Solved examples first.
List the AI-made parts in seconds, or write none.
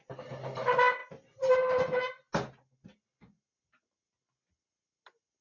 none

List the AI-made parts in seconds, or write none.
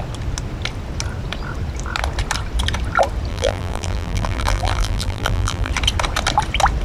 3.3-5.7 (vocoder, BigVGAN v2)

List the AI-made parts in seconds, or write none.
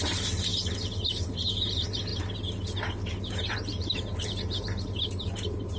0.0-0.5 (vocoder, BigVGAN v2); 1.1-2.1; 3.2-5.8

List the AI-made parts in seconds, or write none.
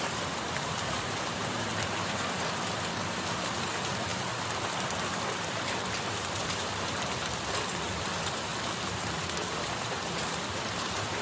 0.0-8.5 (vocoder, BigVGAN v2); 9.5-11.2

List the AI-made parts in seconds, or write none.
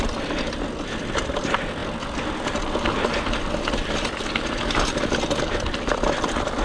none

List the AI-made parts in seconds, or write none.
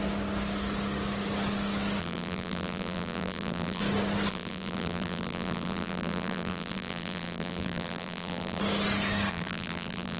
2.0-3.8 (vocoder, BigVGAN v2); 4.3-8.6; 9.3-10.2